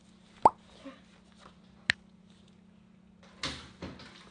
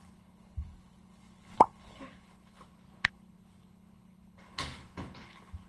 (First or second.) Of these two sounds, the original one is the first